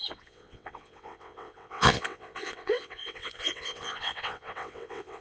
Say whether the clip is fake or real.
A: fake